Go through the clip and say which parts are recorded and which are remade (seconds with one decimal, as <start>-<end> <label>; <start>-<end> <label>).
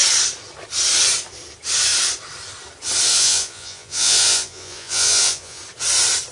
0.0-3.1 recorded; 3.1-5.6 remade; 5.6-6.3 recorded